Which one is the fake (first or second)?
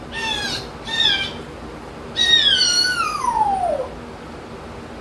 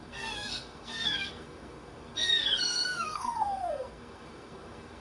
second